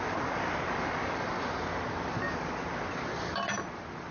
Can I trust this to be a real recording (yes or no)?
yes